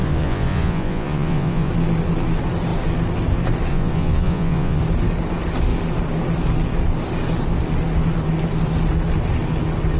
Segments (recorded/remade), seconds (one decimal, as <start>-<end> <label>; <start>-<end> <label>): 0.0-1.7 remade; 1.7-3.7 recorded; 3.7-4.8 remade; 4.8-10.0 recorded